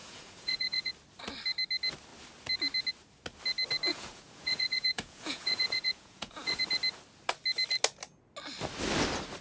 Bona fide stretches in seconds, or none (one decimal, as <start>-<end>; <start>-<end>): 0.9-3.9; 6.6-9.4